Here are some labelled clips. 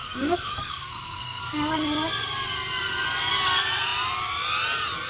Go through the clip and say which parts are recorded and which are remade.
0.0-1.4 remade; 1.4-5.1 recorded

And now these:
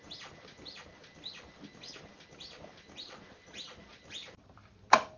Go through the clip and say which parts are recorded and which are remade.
0.0-5.2 recorded

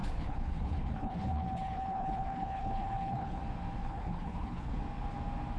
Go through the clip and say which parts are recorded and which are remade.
0.0-3.4 remade; 3.4-3.8 recorded; 3.8-4.8 remade; 4.8-5.6 recorded

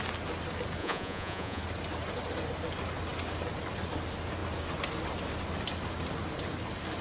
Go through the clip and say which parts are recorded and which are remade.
0.0-0.8 recorded; 0.8-1.6 remade; 1.6-7.0 recorded

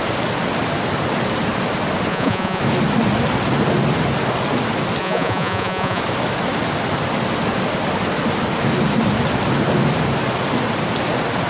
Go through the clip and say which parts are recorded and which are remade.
0.0-2.1 recorded; 2.1-2.6 remade; 2.6-5.0 recorded; 5.0-6.0 remade; 6.0-11.5 recorded